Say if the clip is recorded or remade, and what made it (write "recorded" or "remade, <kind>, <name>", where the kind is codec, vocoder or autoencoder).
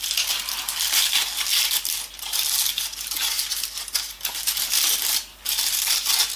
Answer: recorded